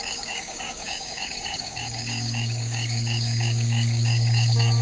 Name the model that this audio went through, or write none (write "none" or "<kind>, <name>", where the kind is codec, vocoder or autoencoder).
codec, DAC